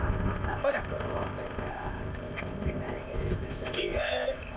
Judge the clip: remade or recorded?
remade